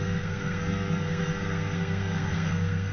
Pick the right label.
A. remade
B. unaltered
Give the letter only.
A